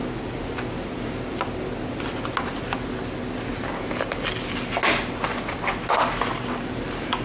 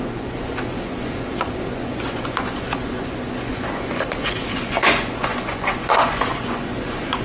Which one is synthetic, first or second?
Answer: second